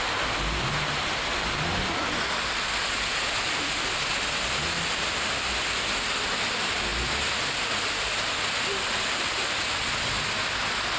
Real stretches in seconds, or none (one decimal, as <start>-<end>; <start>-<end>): 0.0-11.0